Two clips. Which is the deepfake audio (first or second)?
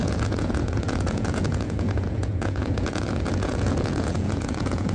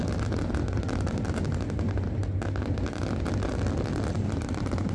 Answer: first